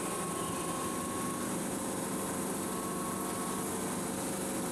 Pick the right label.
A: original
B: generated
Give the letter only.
A